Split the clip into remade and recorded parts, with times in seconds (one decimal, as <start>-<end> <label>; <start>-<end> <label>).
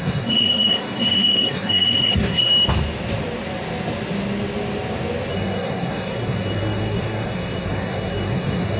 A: 0.0-2.5 remade; 2.5-5.3 recorded; 5.3-8.8 remade